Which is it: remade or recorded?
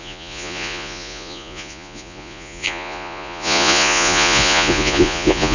remade